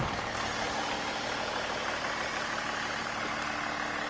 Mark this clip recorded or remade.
recorded